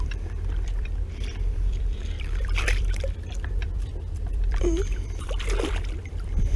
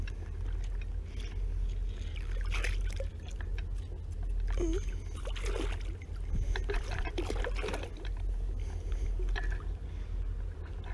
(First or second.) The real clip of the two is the second